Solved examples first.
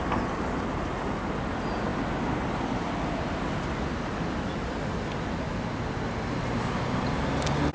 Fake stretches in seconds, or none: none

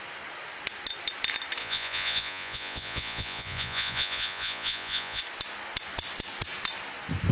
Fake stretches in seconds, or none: 1.6-5.2 (vocoder, Vocos)